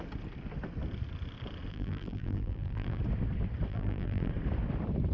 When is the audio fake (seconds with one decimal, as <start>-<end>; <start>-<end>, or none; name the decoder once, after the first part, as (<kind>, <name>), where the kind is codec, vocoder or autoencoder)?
1.7-3.0 (vocoder, BigVGAN v2); 3.7-4.3